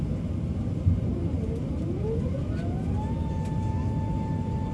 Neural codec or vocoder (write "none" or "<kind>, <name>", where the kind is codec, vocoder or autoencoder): none